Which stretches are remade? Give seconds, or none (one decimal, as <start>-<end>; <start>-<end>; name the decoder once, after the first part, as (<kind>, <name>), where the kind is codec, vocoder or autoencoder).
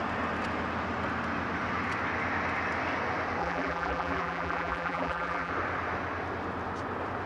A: 3.4-5.5 (vocoder, BigVGAN v2)